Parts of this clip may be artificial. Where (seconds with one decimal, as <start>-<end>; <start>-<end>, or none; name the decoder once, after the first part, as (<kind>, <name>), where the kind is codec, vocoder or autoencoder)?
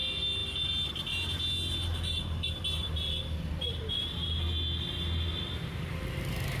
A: none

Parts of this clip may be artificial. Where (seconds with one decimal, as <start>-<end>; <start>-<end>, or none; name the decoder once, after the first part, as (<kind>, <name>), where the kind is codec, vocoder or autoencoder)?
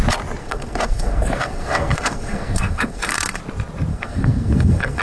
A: 0.4-3.4 (codec, SNAC); 3.9-5.0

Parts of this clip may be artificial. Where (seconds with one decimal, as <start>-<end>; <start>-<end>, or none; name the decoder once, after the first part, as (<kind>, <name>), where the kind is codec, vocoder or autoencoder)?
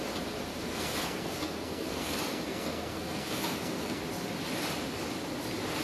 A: 0.5-4.0 (codec, SNAC)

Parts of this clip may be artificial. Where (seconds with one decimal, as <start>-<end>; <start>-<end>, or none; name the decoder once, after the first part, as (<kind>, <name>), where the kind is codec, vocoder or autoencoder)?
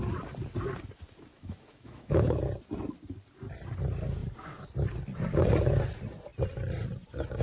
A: 1.3-2.4 (autoencoder, DAC-VAE)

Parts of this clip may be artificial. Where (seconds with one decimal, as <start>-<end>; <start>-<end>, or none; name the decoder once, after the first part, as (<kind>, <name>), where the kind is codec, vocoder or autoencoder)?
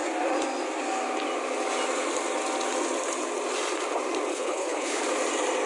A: 4.3-5.0 (codec, HILCodec)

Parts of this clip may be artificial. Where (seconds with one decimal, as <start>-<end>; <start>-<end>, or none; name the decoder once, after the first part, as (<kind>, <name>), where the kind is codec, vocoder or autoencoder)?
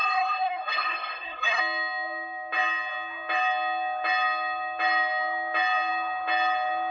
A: 0.0-1.6 (codec, SNAC)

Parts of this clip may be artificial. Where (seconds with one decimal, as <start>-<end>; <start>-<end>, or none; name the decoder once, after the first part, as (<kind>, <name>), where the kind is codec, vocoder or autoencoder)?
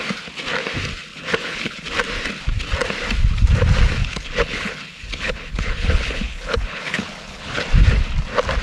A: 1.1-1.8 (codec, HILCodec); 4.0-7.6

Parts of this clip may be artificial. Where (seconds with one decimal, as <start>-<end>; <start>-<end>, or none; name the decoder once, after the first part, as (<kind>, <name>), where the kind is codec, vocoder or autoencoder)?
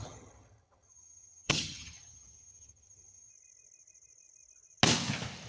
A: 0.0-3.3 (vocoder, HiFi-GAN)